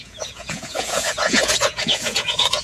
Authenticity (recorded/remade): remade